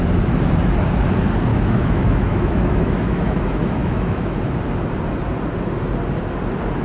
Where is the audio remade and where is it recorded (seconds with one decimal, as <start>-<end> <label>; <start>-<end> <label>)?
0.0-1.5 recorded; 1.5-4.4 remade; 4.4-6.8 recorded